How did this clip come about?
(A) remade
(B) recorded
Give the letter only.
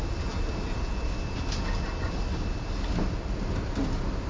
B